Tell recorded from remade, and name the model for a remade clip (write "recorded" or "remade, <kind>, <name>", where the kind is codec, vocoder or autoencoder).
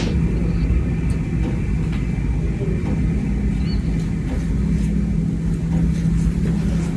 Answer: recorded